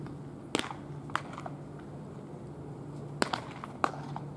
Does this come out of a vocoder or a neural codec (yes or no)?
no